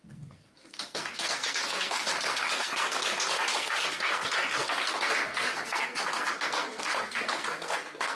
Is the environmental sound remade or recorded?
remade